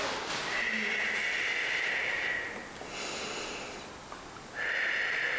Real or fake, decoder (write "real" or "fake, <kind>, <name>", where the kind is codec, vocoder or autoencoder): real